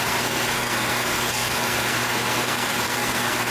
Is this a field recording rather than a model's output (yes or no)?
no